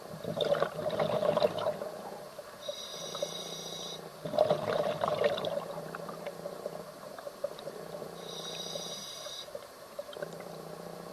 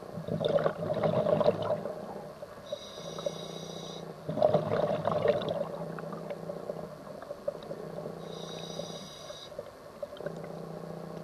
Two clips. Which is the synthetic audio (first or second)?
first